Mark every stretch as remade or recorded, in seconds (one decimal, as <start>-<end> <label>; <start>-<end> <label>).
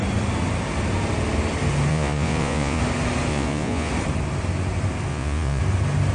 0.0-1.9 recorded; 1.9-2.8 remade; 2.8-3.3 recorded; 3.3-3.9 remade; 3.9-5.1 recorded; 5.1-5.6 remade; 5.6-6.1 recorded